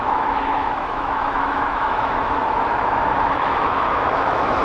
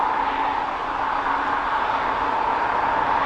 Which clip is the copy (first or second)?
first